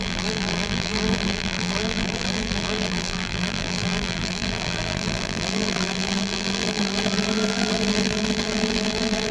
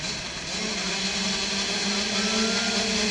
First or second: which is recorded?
second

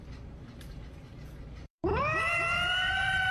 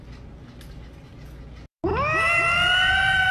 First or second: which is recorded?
second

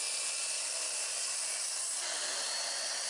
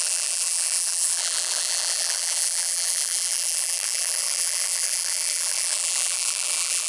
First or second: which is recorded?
first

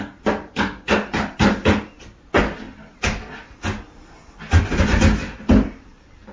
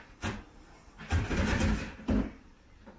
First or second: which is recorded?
first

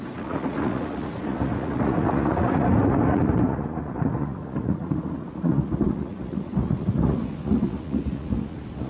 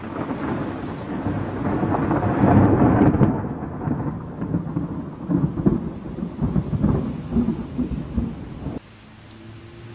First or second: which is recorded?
second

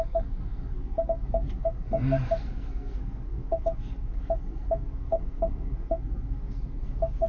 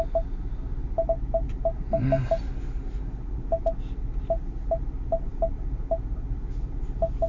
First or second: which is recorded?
second